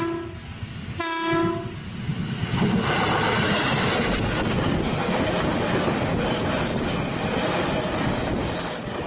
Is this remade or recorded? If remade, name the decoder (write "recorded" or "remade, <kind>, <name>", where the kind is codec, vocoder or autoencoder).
recorded